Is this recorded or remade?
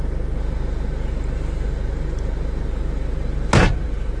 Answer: recorded